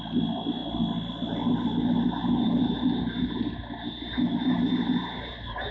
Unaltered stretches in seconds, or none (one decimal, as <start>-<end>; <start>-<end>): 0.0-2.2; 3.0-5.7